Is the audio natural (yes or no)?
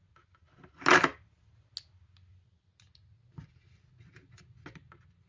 yes